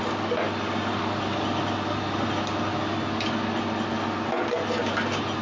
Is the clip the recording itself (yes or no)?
yes